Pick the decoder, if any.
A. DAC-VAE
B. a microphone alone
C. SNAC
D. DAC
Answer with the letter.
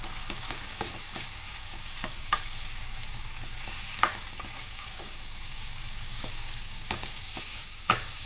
D